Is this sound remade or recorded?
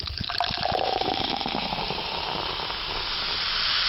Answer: recorded